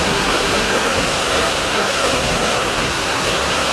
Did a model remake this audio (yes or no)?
yes